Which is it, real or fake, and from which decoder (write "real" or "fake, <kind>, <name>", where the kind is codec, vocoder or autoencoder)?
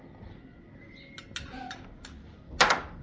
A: real